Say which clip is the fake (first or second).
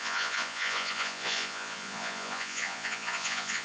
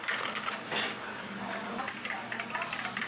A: first